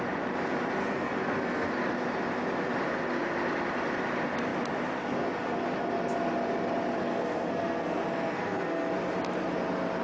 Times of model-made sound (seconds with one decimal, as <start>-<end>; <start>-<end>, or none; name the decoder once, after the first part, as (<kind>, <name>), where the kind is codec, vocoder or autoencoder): 0.8-1.7 (codec, SNAC); 7.0-8.9